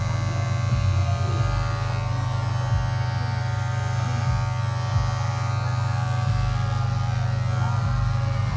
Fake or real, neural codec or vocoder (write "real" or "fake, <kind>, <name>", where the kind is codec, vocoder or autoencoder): real